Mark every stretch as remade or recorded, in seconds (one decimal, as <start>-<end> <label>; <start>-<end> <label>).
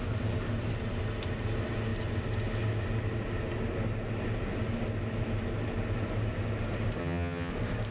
0.0-7.0 recorded; 7.0-7.5 remade; 7.5-7.9 recorded